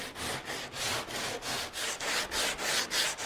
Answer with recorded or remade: recorded